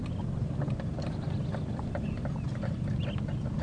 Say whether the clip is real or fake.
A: real